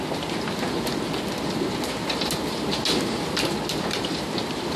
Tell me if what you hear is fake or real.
real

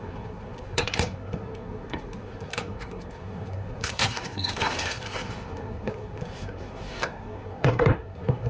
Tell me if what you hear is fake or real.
fake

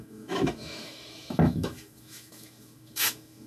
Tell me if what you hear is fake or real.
fake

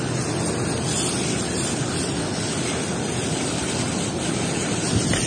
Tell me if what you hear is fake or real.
real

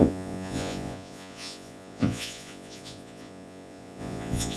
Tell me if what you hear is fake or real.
fake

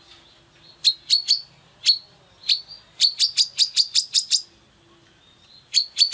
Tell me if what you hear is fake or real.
real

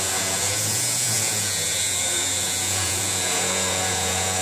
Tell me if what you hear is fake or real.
fake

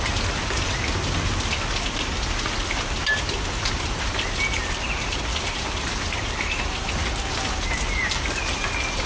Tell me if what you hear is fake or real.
real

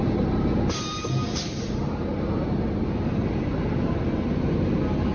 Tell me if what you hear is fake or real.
real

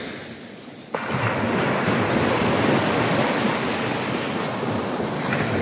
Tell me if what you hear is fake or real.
real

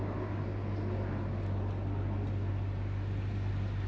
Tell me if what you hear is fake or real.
real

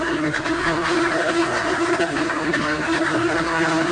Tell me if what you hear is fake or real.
fake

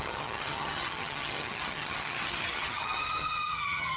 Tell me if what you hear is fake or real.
fake